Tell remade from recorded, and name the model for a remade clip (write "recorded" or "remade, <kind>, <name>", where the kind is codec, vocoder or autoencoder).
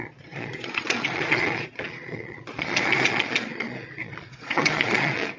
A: remade, vocoder, Vocos